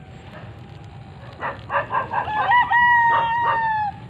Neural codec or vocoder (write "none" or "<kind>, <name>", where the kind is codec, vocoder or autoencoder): none